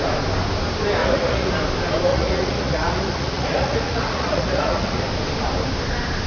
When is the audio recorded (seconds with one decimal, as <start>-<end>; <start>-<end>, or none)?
0.0-1.0; 1.5-2.1; 5.0-6.3